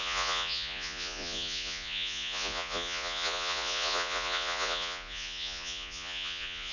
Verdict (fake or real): fake